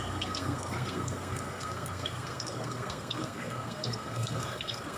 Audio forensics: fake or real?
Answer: fake